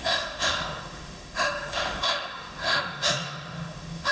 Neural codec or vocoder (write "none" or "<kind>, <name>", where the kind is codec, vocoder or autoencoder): autoencoder, DAC-VAE